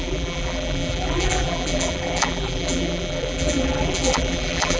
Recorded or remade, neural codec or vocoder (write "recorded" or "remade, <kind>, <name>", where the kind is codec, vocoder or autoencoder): remade, vocoder, BigVGAN v2